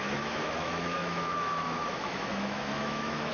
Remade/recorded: remade